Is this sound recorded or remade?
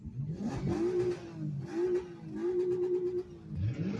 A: recorded